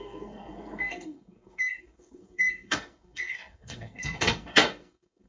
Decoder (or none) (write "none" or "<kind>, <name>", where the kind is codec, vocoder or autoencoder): codec, SNAC